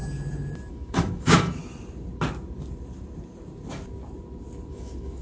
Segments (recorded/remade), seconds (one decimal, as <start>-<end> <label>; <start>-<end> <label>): 0.0-0.7 recorded; 0.7-1.6 remade; 1.6-4.7 recorded; 4.7-5.2 remade

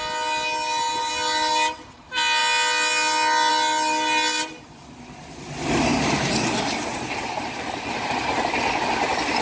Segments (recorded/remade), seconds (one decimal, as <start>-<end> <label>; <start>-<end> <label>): 0.0-5.9 recorded; 5.9-8.1 remade; 8.1-9.4 recorded

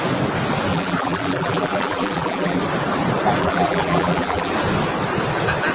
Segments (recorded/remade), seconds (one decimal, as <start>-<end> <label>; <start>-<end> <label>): 0.0-0.7 recorded; 0.7-2.6 remade; 2.6-3.4 recorded; 3.4-4.5 remade; 4.5-5.7 recorded

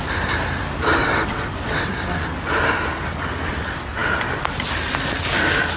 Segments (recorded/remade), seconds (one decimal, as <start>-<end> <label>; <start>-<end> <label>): 0.0-1.0 recorded; 1.0-1.9 remade; 1.9-5.8 recorded

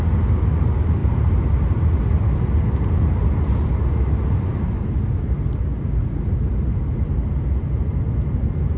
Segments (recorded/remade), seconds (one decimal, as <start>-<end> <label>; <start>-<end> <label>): 0.0-8.8 recorded

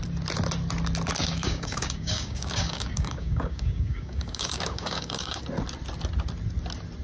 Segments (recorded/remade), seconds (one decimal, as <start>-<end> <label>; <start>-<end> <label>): 0.0-1.2 recorded; 1.2-5.4 remade; 5.4-7.0 recorded

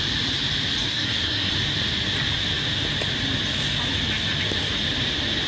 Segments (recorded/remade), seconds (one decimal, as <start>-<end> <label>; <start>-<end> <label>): 0.0-0.8 recorded; 0.8-1.5 remade; 1.5-5.5 recorded